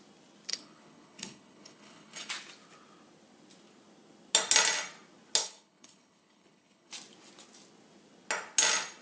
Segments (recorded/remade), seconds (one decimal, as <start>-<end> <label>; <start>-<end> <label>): 0.0-0.5 recorded; 0.5-2.3 remade; 2.3-5.4 recorded; 5.4-6.9 remade; 6.9-9.0 recorded